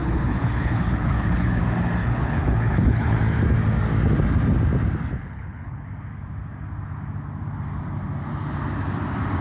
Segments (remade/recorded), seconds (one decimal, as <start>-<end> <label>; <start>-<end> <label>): 0.0-1.6 remade; 1.6-2.0 recorded; 2.0-3.2 remade; 3.2-5.2 recorded; 5.2-5.8 remade; 5.8-9.4 recorded